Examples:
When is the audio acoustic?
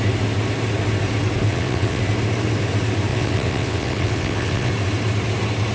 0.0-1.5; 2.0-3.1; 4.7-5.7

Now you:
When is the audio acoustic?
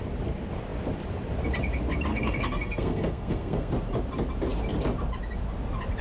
0.0-2.1; 3.7-6.0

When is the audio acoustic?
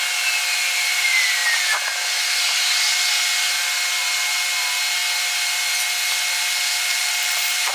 0.0-6.9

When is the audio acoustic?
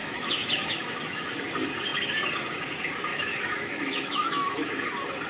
1.3-3.1; 4.7-5.3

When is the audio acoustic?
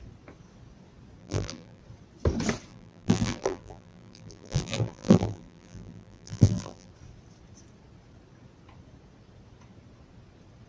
0.0-1.2; 1.8-2.7; 6.9-10.7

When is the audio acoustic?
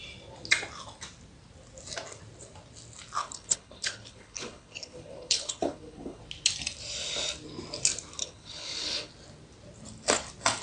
0.0-3.2; 6.2-8.2; 9.1-10.6